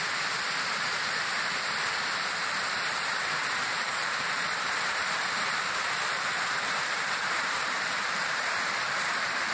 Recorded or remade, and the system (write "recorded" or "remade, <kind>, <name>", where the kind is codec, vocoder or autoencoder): remade, vocoder, BigVGAN v2